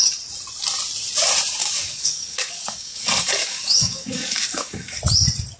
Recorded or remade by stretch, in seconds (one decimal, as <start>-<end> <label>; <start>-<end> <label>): 0.0-1.6 recorded; 1.6-5.0 remade; 5.0-5.6 recorded